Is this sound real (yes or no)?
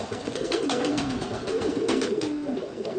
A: no